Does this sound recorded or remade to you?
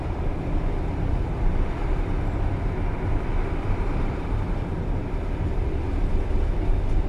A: recorded